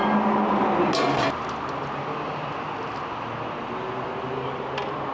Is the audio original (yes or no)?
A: yes